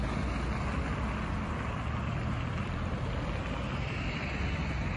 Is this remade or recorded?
recorded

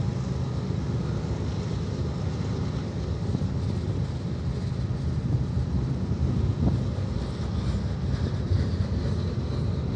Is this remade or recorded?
recorded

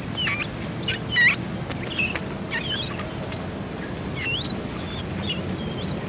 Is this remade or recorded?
recorded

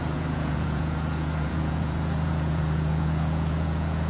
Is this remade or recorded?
remade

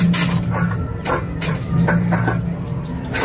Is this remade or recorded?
recorded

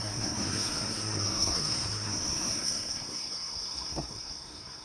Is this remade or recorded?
remade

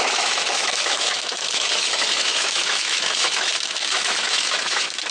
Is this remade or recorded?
remade